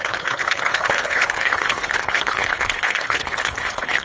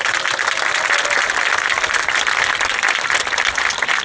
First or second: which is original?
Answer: second